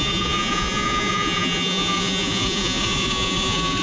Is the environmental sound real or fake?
fake